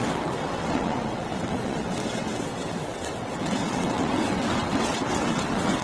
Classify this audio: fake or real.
fake